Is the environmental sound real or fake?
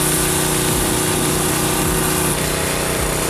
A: real